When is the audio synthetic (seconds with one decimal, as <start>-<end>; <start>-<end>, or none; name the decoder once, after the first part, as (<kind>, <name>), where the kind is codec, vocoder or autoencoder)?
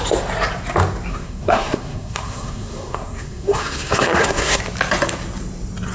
1.1-4.6 (codec, SNAC)